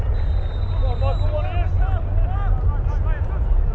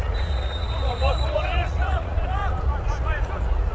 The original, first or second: first